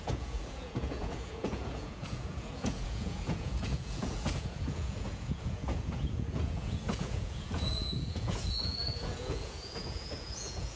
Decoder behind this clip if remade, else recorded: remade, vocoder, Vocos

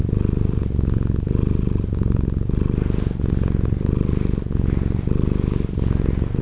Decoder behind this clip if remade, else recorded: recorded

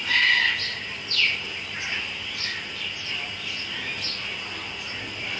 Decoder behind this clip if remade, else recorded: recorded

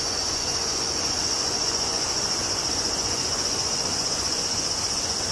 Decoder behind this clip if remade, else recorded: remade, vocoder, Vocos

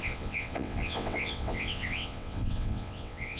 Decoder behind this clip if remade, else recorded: remade, vocoder, WaveNeXt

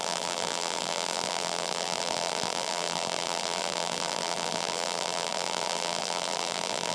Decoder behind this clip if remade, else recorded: remade, vocoder, BigVGAN v2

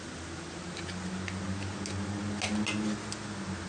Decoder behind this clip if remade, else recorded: recorded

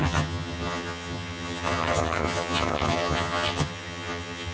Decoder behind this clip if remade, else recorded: remade, vocoder, HiFi-GAN